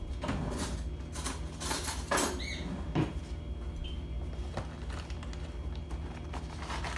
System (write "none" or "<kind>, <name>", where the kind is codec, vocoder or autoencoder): none